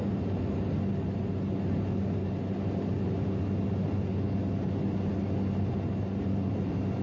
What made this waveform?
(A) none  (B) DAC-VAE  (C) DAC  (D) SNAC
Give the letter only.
A